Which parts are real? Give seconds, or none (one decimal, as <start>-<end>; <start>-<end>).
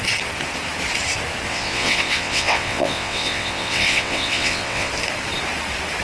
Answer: 0.0-1.5; 4.9-6.0